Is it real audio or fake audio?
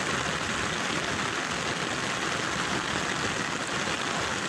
real